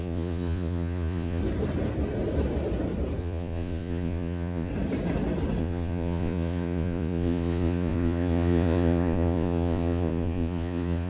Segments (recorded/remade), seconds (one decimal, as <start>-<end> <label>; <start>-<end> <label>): 0.0-1.4 remade; 1.4-3.2 recorded; 3.2-4.7 remade; 4.7-5.6 recorded; 5.6-11.1 remade